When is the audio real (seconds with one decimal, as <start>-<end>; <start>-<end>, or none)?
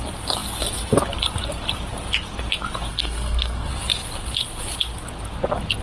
0.0-2.9; 3.7-5.8